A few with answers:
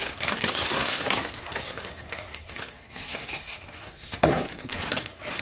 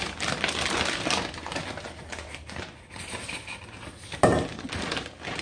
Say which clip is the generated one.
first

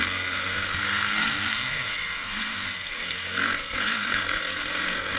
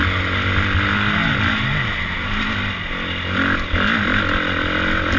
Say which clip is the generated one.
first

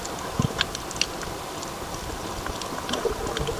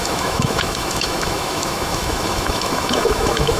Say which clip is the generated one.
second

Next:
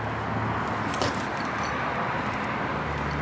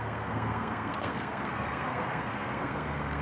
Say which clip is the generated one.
second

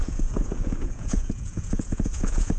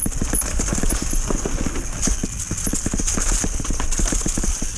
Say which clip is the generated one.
first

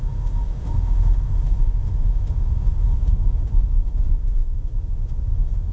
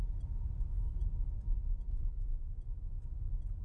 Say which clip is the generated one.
first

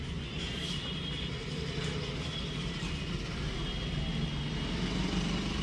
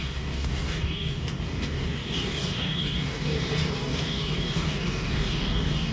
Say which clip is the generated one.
second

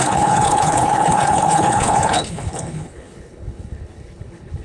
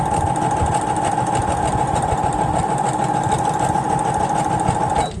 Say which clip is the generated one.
first